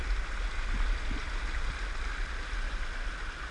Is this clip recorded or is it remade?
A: recorded